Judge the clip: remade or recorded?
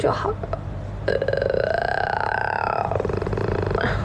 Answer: remade